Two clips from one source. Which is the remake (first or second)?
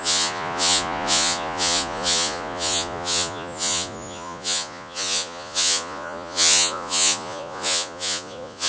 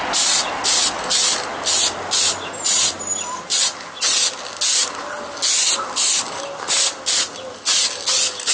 first